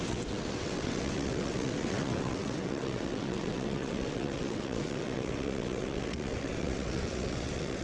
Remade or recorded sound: remade